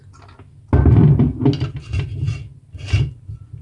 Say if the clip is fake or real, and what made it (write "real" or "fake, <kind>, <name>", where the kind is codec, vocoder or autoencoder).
real